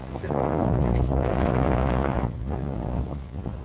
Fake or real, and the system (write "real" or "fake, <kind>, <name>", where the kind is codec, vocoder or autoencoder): fake, vocoder, Vocos